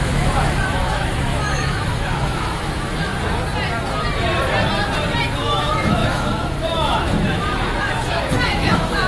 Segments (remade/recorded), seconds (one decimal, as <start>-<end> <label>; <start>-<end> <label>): 0.0-3.1 remade; 3.1-5.4 recorded; 5.4-9.1 remade